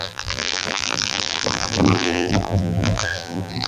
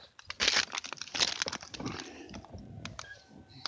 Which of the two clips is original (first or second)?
second